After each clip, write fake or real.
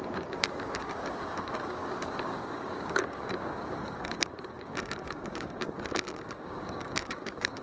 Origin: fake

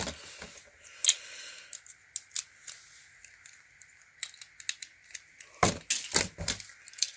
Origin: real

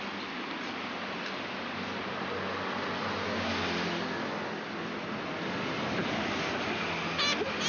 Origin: real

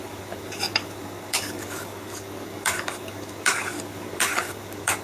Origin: fake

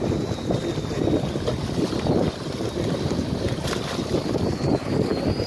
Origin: real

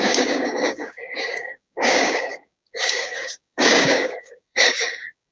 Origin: fake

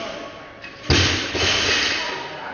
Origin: real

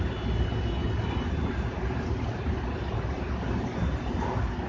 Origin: real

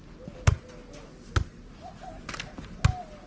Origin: real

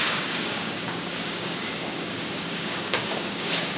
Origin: fake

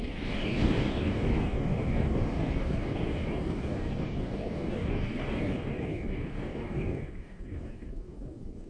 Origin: fake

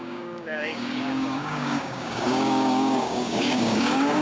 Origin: fake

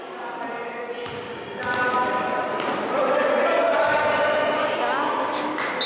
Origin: real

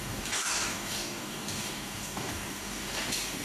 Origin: fake